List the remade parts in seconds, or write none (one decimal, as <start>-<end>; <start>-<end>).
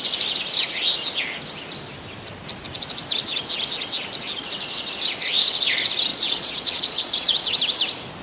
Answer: 6.1-7.6